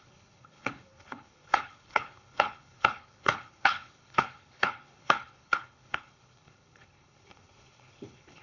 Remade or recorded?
remade